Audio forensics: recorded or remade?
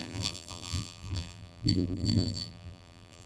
remade